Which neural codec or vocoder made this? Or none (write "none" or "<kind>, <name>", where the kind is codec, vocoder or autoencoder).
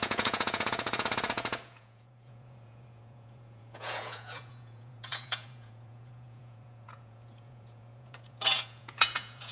vocoder, Vocos